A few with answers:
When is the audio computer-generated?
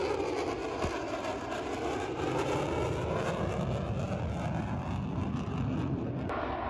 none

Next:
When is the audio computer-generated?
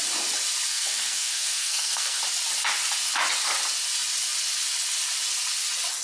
0.7-2.2 (codec, SNAC)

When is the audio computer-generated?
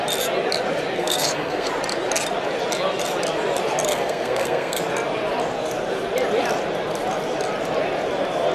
1.0-1.7 (codec, SNAC); 3.9-4.8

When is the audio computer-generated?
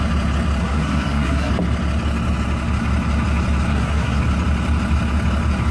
0.6-1.5 (codec, SNAC); 3.7-4.2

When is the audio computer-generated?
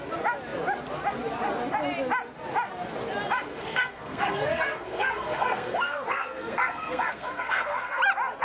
3.5-8.0 (codec, SNAC)